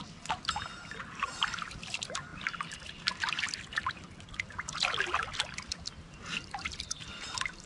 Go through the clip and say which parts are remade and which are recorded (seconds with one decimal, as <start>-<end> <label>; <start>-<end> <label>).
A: 0.0-7.7 recorded